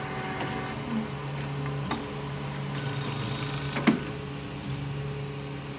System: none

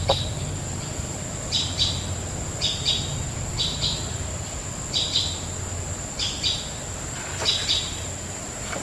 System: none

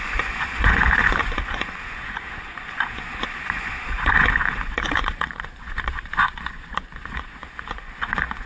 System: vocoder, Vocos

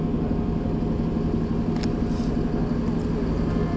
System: none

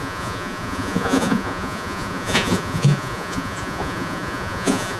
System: vocoder, Vocos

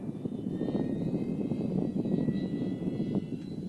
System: none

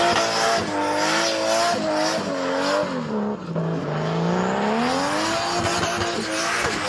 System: none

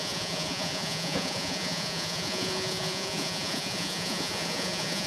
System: vocoder, Vocos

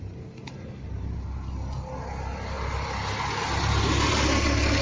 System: none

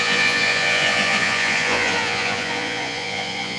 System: vocoder, Vocos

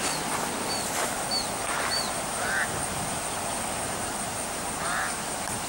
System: none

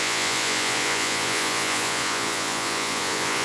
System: vocoder, Vocos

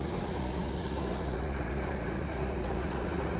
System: vocoder, Vocos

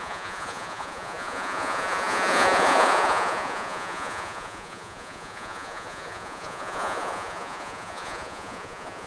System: vocoder, Vocos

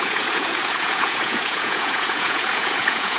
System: vocoder, Vocos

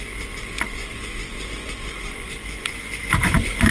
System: vocoder, Vocos